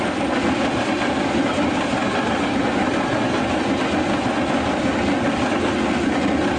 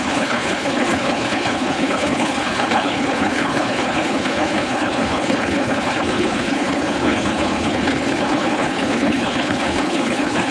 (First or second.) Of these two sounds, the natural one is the first